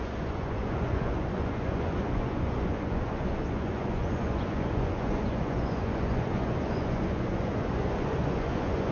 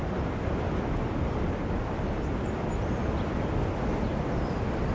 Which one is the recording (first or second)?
second